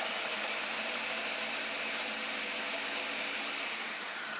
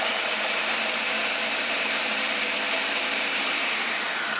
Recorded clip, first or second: first